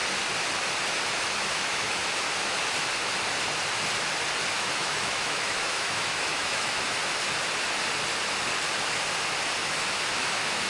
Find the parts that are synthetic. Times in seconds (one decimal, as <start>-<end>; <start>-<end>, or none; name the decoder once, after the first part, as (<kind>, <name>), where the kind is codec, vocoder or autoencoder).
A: 1.1-2.0 (autoencoder, DAC-VAE); 4.6-7.0; 9.6-10.7